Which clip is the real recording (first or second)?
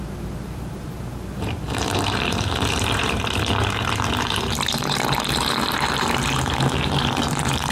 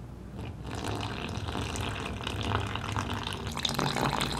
second